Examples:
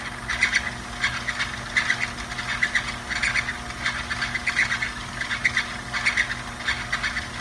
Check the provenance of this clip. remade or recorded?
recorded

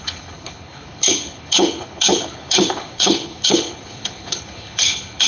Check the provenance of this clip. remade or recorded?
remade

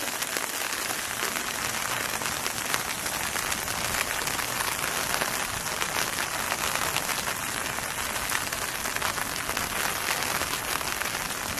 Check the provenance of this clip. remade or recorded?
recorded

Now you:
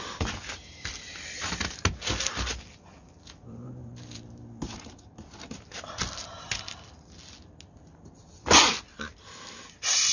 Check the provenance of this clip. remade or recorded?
recorded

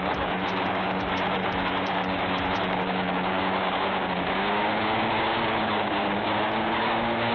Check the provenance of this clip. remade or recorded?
remade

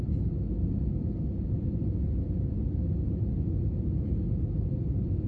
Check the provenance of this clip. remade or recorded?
recorded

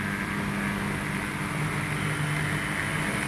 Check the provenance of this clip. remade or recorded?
recorded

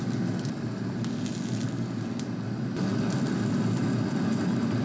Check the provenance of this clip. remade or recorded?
recorded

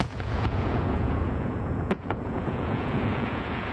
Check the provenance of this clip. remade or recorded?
remade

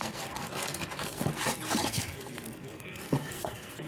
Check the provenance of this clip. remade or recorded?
remade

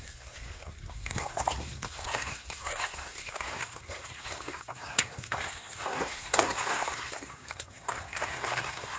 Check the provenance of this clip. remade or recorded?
remade